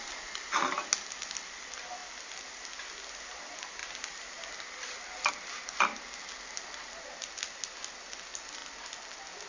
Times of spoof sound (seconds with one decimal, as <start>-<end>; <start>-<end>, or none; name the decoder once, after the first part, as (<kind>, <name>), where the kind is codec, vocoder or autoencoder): none